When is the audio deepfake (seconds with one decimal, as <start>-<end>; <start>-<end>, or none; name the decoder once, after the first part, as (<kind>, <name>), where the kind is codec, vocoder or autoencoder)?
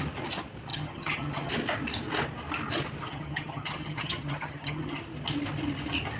0.7-1.5 (vocoder, HiFi-GAN); 3.1-5.0